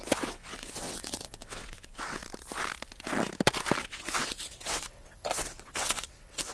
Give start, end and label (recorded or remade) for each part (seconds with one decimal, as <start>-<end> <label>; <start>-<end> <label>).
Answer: 0.0-2.2 remade; 2.2-3.8 recorded; 3.8-6.5 remade